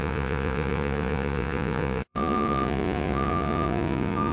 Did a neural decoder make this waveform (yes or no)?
yes